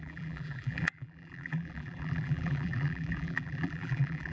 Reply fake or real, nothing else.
fake